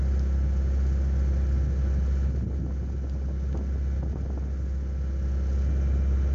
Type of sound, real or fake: real